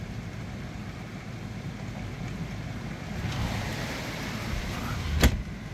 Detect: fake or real real